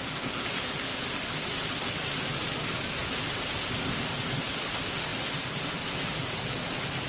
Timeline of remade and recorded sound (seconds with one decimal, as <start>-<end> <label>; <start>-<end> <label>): 0.0-7.1 recorded